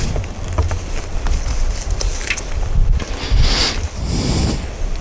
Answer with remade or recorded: recorded